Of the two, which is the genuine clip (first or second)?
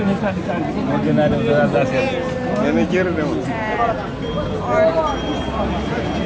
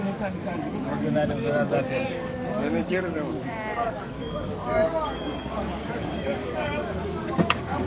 first